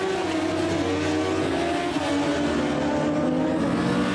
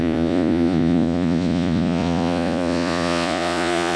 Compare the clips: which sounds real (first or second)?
first